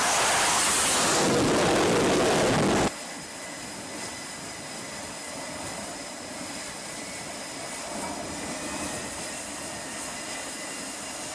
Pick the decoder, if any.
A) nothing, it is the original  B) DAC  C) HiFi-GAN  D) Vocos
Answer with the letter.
A